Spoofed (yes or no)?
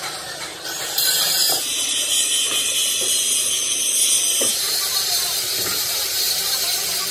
yes